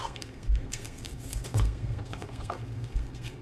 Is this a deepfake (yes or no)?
yes